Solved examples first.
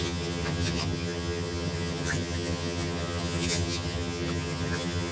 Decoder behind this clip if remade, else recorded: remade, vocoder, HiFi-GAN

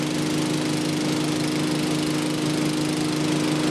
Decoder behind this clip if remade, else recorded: recorded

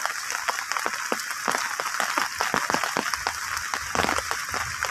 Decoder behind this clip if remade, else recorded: recorded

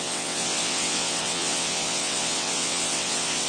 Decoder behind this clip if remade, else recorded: remade, vocoder, WaveNeXt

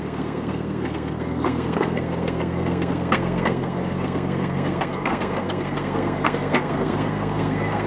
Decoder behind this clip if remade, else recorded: remade, codec, SNAC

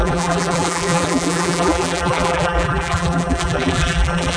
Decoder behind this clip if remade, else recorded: remade, vocoder, BigVGAN v2